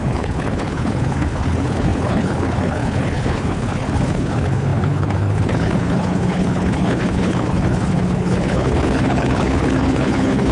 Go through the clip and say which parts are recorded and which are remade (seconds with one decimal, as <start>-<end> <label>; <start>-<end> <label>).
0.0-10.5 remade